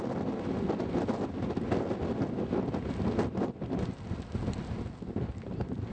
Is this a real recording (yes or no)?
yes